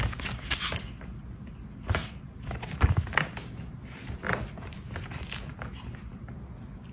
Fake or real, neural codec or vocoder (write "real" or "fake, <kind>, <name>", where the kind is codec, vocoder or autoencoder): real